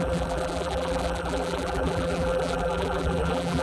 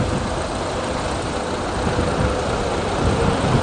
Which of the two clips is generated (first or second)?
first